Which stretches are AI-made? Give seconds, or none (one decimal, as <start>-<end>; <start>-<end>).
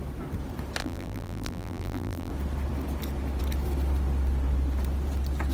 0.8-2.3